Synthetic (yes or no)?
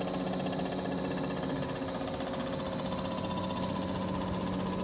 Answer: no